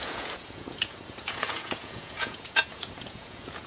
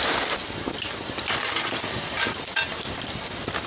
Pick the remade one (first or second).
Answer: first